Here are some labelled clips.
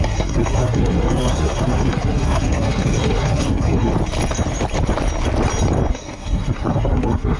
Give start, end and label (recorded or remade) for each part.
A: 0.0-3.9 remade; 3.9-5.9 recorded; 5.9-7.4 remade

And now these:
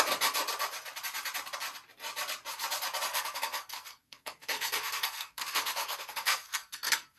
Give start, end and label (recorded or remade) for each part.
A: 0.0-3.1 recorded; 3.1-7.2 remade

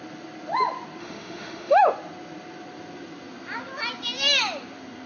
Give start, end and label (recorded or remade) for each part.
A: 0.0-1.0 recorded; 1.0-1.8 remade; 1.8-5.1 recorded